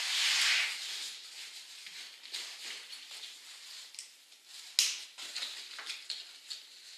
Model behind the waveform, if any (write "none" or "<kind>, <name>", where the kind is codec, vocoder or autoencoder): none